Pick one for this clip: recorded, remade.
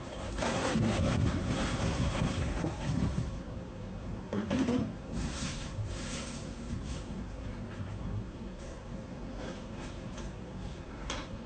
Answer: remade